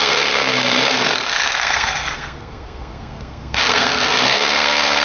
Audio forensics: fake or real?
fake